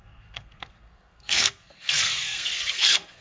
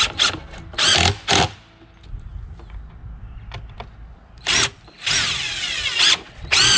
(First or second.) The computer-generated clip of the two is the first